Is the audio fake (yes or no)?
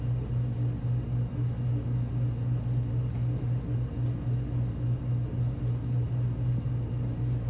no